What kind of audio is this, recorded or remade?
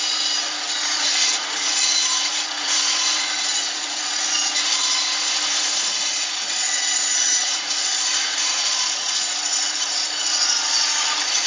remade